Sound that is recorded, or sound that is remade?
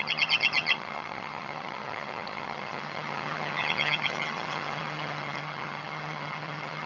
remade